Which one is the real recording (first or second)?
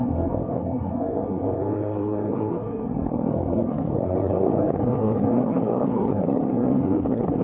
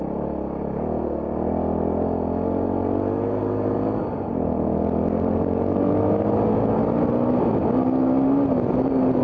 second